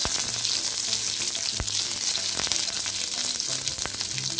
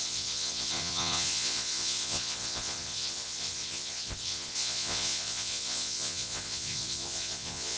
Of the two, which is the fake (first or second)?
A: second